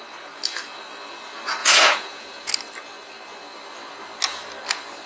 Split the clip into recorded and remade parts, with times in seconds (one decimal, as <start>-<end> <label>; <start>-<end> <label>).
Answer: 0.0-1.6 recorded; 1.6-2.5 remade; 2.5-5.1 recorded